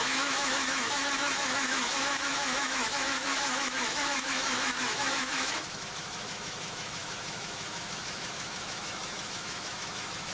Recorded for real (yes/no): no